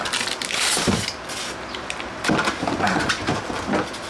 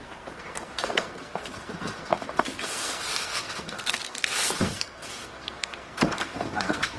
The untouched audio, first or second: first